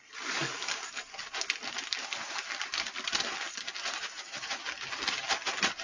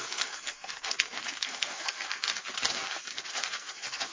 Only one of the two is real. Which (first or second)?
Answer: first